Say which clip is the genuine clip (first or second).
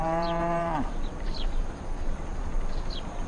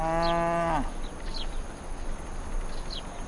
second